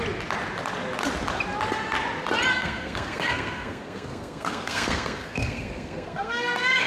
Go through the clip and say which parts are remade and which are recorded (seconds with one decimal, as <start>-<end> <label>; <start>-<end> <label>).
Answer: 0.0-2.5 recorded; 2.5-6.9 remade